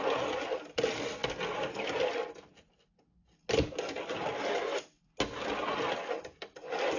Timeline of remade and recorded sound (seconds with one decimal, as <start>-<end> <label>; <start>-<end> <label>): 0.0-7.0 recorded